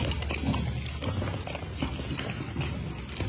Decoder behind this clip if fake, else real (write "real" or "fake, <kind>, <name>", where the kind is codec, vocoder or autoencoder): real